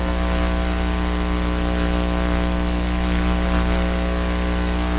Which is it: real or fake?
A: real